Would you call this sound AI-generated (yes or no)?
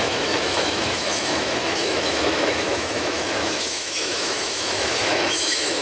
yes